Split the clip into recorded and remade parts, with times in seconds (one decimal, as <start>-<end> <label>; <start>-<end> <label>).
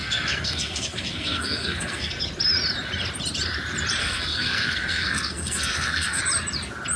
0.0-2.1 remade; 2.1-4.0 recorded; 4.0-6.2 remade; 6.2-7.0 recorded